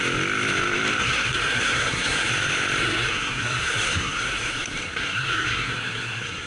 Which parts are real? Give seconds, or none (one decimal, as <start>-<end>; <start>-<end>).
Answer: 0.0-1.0; 2.3-2.8